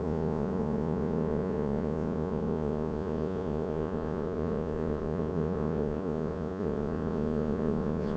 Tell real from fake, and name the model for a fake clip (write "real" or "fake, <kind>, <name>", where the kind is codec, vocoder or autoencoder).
fake, vocoder, Vocos